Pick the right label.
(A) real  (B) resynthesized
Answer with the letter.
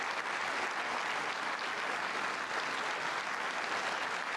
A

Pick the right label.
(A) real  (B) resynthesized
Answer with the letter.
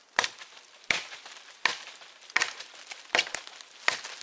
A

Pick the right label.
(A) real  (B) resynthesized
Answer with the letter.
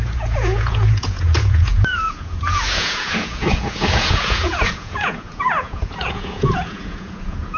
B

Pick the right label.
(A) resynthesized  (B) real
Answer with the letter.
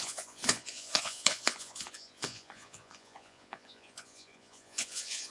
A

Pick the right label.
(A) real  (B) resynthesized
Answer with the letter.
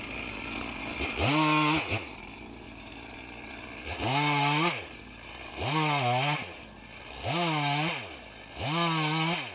A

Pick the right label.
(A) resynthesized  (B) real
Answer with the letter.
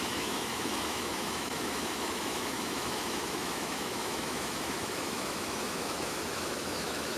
A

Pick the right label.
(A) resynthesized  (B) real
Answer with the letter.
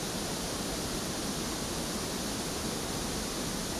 B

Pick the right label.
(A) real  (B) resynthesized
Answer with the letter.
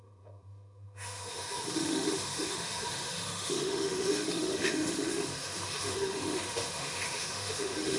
B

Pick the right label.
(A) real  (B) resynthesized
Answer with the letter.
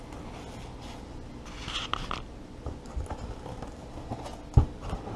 A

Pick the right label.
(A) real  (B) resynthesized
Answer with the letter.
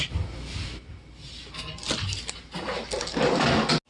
A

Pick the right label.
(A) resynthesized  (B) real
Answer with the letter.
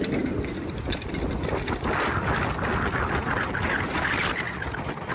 B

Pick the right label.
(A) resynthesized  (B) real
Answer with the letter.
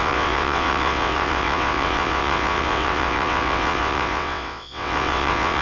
A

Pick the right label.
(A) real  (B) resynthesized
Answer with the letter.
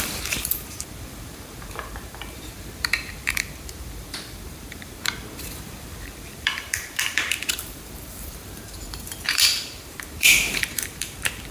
B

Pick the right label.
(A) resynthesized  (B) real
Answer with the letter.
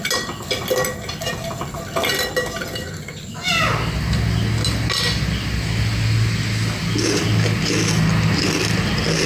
B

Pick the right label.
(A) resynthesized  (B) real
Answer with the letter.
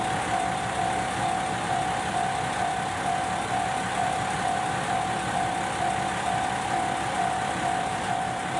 A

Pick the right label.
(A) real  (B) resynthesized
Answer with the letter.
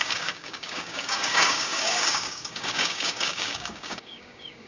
B